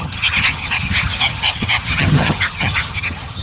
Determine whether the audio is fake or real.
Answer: fake